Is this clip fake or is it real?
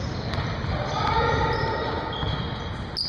real